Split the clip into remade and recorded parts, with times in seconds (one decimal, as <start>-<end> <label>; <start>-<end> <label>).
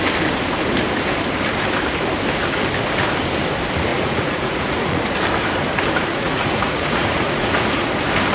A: 0.0-3.9 recorded; 3.9-5.0 remade; 5.0-6.1 recorded; 6.1-7.9 remade; 7.9-8.3 recorded